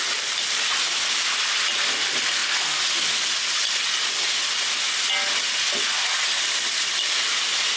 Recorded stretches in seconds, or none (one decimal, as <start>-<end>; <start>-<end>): 0.0-7.8